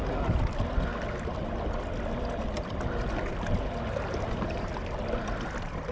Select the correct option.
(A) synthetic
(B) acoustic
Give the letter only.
B